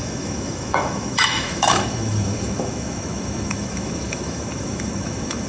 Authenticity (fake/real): fake